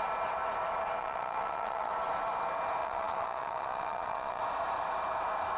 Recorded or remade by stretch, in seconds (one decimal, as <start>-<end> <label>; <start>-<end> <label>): 0.0-1.0 recorded; 1.0-1.9 remade; 1.9-2.8 recorded; 2.8-4.4 remade; 4.4-5.6 recorded